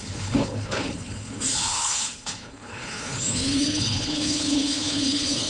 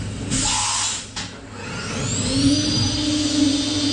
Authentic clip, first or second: second